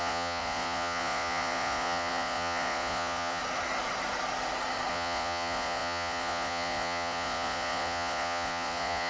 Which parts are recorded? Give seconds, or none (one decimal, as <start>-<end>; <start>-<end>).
3.4-4.9

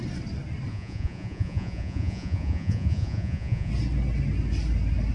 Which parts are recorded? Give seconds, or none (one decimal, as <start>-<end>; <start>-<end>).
0.0-0.7; 3.7-5.1

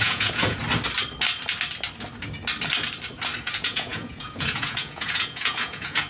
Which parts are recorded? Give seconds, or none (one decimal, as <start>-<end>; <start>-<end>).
0.6-3.4